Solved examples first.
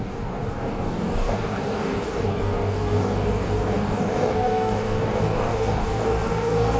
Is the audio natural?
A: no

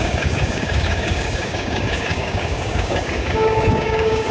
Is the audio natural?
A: no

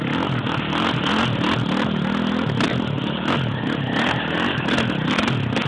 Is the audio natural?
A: yes